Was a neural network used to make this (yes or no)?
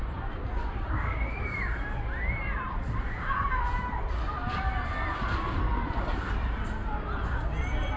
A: yes